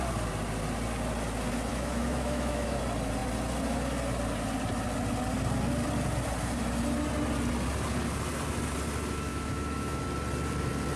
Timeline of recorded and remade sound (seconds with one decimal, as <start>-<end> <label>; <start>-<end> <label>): 0.0-1.7 recorded; 1.7-2.8 remade; 2.8-9.3 recorded; 9.3-10.0 remade; 10.0-11.0 recorded